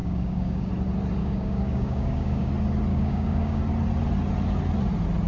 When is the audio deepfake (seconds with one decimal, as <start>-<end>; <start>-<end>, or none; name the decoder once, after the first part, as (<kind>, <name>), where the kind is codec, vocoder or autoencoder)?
0.0-0.7 (codec, DAC); 1.2-2.5; 2.9-3.6